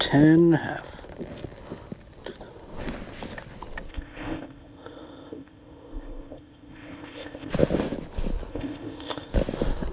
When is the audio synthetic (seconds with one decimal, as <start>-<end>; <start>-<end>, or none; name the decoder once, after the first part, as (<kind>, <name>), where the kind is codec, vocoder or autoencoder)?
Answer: 3.9-7.5 (codec, ZipCodec); 8.5-9.3

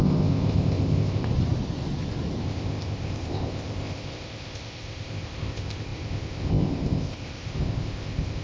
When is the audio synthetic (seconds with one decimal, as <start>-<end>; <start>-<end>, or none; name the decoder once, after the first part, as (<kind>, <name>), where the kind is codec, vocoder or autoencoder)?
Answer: 0.0-1.3 (codec, ZipCodec); 2.4-8.4

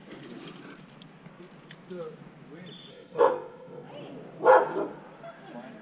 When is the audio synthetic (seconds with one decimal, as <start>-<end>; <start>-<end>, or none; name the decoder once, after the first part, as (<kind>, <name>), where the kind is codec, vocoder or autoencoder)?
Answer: 2.9-3.9 (codec, ZipCodec)

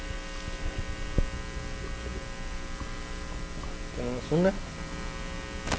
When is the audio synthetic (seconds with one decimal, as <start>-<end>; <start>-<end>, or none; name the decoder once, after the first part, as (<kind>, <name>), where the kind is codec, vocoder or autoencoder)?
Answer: none

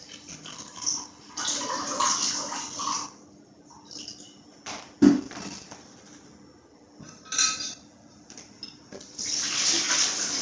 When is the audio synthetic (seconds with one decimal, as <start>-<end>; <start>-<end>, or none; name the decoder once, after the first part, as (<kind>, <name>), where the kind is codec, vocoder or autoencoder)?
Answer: none

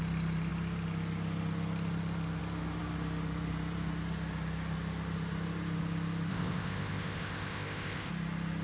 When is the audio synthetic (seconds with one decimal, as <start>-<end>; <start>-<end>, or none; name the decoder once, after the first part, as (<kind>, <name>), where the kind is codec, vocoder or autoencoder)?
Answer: 6.3-8.1 (codec, ZipCodec)

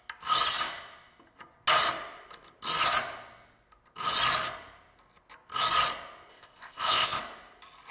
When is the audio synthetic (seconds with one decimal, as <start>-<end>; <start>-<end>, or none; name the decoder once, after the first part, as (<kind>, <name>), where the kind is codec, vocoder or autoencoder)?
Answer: 6.3-7.2 (codec, ZipCodec)